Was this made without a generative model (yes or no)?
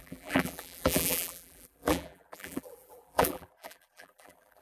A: no